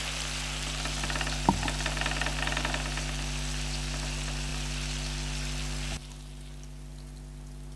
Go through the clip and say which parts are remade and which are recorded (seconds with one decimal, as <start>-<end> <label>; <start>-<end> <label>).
0.0-7.8 recorded